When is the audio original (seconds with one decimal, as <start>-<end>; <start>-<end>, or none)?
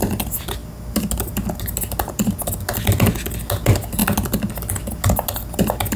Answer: 0.0-6.0